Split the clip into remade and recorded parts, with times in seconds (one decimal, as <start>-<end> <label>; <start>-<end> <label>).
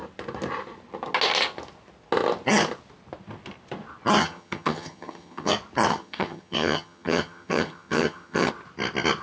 0.0-4.2 recorded; 4.2-5.5 remade; 5.5-5.9 recorded; 5.9-8.5 remade; 8.5-9.2 recorded